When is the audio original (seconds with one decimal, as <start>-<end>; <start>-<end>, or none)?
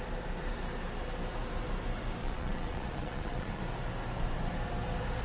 0.0-2.2; 3.6-5.2